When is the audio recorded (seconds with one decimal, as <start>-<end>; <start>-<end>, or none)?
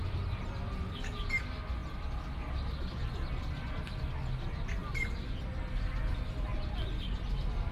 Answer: 0.0-7.7